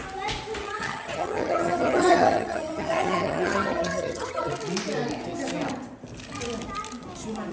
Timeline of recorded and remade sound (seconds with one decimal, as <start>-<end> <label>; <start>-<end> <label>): 0.0-0.6 recorded; 0.6-4.5 remade; 4.5-7.5 recorded